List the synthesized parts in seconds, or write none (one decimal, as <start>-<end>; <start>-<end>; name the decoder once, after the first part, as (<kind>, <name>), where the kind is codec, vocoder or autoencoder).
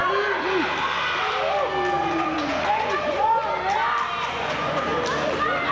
2.0-3.4 (vocoder, Vocos); 4.2-4.9